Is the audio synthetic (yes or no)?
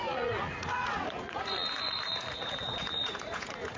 yes